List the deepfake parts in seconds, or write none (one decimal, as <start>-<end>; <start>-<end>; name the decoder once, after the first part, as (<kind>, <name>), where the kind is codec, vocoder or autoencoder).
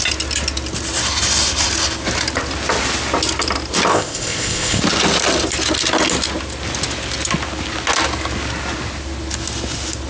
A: 3.9-4.8 (codec, ZipCodec)